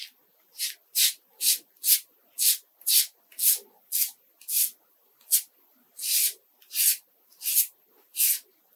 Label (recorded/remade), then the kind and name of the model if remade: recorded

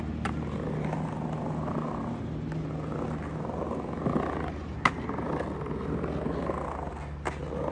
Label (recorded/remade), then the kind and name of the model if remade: recorded